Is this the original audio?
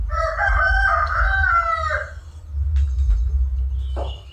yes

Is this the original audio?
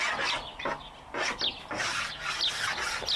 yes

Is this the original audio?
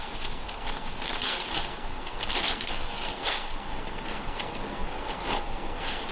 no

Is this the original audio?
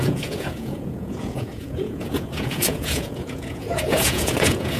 no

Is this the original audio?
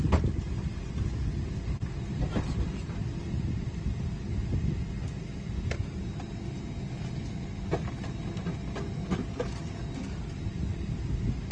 yes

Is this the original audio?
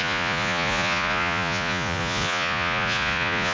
no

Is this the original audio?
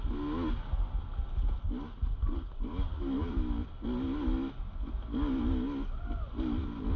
yes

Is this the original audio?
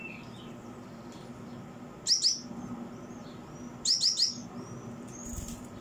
yes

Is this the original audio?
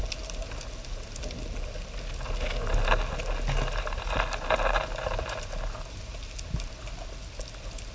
yes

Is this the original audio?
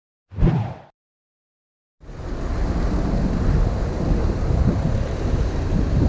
yes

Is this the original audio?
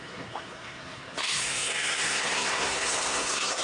no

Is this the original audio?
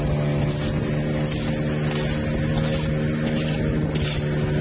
yes